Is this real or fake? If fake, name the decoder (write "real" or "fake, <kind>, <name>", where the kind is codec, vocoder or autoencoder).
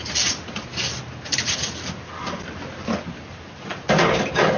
real